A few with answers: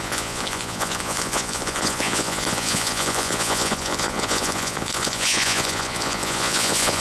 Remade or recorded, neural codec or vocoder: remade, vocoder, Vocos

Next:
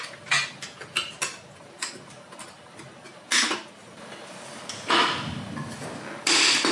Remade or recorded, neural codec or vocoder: recorded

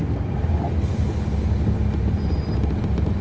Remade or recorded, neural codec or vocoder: recorded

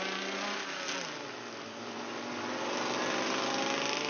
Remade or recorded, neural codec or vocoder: recorded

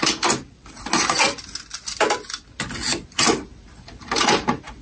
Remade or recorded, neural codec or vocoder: recorded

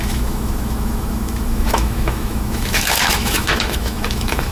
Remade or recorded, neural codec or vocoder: remade, autoencoder, DAC-VAE